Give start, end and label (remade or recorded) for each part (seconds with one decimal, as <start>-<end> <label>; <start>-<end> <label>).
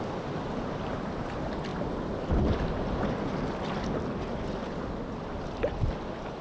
0.0-6.4 recorded